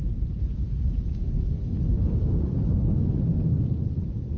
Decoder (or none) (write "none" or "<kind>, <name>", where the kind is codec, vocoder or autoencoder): none